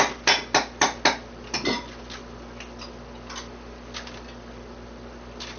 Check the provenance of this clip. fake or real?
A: real